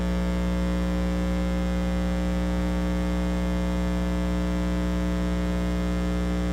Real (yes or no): yes